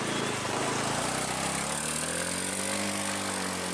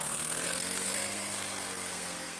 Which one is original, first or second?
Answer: first